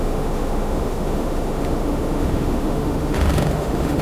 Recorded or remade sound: remade